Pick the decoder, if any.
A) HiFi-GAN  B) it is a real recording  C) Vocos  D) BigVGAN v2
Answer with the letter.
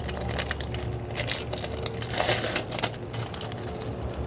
B